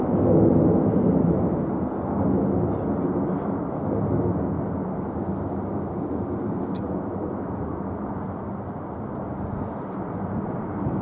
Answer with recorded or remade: recorded